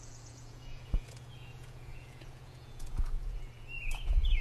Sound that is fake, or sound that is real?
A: fake